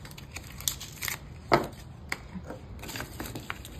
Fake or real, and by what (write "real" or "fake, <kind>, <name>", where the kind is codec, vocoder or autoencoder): real